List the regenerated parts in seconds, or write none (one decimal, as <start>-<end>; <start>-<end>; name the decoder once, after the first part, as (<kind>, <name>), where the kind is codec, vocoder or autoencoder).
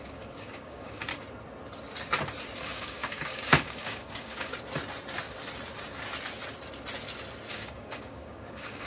0.0-1.1 (codec, DAC); 2.6-4.5; 7.5-8.9